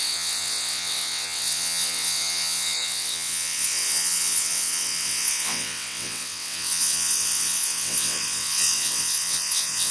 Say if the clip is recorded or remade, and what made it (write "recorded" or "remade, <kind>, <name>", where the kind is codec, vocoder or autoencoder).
remade, vocoder, WaveNeXt